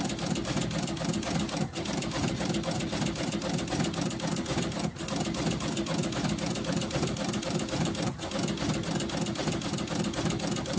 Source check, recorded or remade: recorded